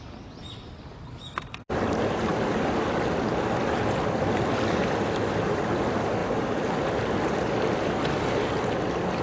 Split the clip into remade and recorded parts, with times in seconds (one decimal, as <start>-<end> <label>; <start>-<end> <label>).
0.0-9.2 recorded